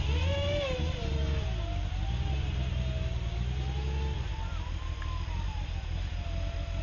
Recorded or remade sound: recorded